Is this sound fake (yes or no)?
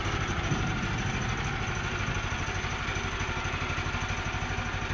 no